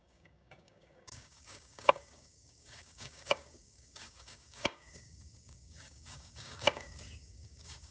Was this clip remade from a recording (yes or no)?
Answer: yes